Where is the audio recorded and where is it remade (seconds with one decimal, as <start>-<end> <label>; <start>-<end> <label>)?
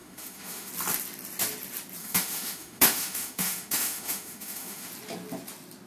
0.0-0.7 remade; 0.7-2.0 recorded; 2.0-4.9 remade; 4.9-5.9 recorded